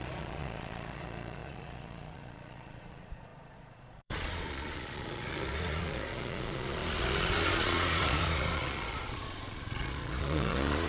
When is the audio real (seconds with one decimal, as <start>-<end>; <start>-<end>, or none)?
none